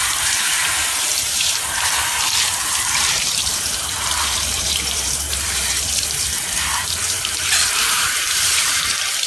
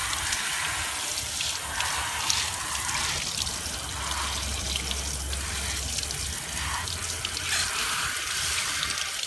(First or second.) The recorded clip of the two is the second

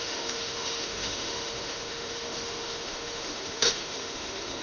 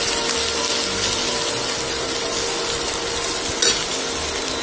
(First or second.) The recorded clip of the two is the second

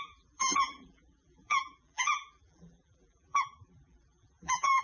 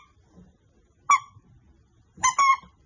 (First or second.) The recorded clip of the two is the second